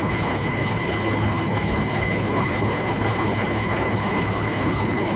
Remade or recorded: remade